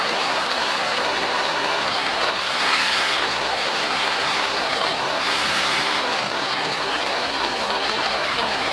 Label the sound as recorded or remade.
remade